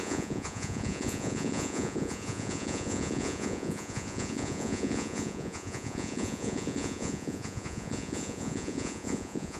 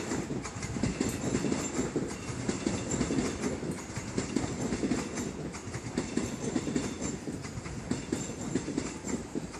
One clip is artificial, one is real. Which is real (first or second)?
second